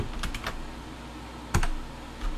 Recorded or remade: recorded